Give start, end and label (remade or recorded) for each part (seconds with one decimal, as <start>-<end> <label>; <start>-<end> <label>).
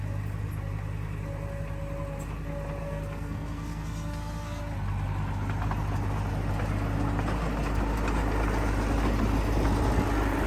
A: 0.0-2.8 recorded; 2.8-4.6 remade; 4.6-10.5 recorded